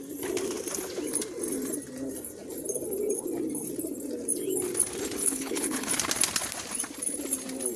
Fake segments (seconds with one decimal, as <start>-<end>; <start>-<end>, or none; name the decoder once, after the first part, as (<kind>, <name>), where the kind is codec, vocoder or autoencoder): 5.2-5.9 (codec, HILCodec)

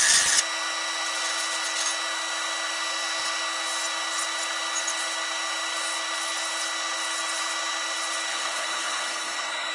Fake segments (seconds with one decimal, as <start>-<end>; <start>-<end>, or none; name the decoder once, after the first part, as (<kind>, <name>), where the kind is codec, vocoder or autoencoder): 8.3-9.7 (codec, HILCodec)

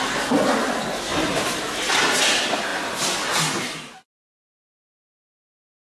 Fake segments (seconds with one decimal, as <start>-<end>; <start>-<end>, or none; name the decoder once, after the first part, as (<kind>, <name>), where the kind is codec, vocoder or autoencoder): none

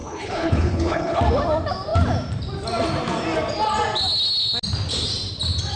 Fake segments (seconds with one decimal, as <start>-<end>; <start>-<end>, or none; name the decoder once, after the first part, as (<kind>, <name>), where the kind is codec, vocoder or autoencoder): 0.0-1.2 (codec, HILCodec)

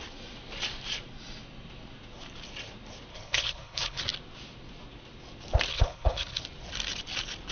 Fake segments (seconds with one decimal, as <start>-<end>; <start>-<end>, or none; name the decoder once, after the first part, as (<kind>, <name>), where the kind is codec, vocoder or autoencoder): 3.1-4.0 (codec, HILCodec); 5.7-6.4

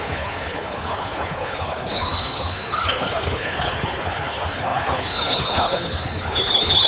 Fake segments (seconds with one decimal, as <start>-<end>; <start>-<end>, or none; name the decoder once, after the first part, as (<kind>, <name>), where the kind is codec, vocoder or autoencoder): 0.0-6.9 (codec, HILCodec)

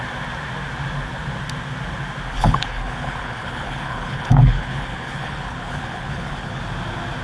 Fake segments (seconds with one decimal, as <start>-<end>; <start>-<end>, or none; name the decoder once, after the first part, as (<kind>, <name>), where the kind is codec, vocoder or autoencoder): 2.3-6.6 (codec, HILCodec)

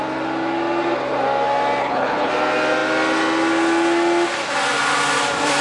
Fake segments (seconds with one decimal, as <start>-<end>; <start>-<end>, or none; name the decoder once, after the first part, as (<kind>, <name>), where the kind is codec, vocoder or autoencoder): 1.8-2.3 (codec, HILCodec)